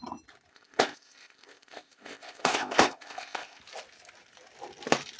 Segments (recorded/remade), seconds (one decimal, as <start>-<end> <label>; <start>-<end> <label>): 0.0-0.5 recorded; 0.5-3.6 remade; 3.6-5.2 recorded